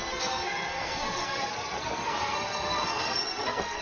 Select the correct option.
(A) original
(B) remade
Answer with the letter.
B